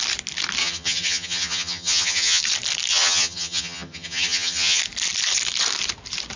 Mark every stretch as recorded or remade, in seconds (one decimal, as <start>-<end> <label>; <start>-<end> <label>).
0.0-0.6 recorded; 0.6-2.4 remade; 2.4-2.9 recorded; 2.9-4.8 remade; 4.8-6.4 recorded